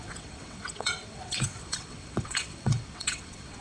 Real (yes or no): no